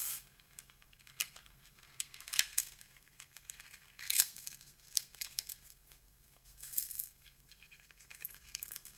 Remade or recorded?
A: remade